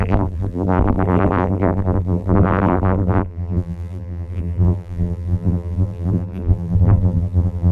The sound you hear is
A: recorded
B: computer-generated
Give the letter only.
B